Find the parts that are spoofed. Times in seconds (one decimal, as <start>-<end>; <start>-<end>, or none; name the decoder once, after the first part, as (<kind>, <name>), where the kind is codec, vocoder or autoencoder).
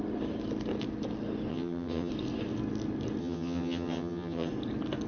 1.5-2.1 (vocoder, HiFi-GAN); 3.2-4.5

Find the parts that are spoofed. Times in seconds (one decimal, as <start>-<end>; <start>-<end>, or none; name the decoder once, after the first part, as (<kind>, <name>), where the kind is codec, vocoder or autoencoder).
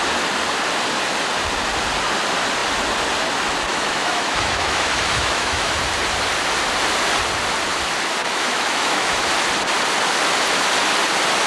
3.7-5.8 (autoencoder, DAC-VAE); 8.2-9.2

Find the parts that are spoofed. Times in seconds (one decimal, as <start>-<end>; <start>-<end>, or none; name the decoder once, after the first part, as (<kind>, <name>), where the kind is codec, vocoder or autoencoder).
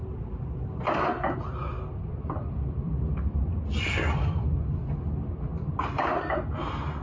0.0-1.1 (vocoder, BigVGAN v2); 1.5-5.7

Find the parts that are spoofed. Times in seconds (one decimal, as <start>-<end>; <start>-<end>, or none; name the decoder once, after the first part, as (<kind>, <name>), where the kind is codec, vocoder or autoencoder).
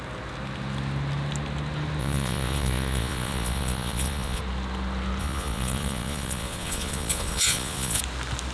2.0-4.4 (vocoder, Vocos); 5.2-8.0